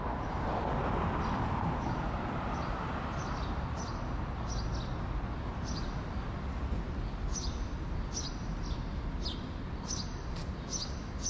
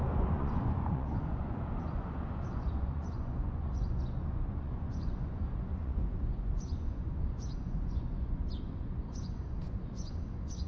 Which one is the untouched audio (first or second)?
first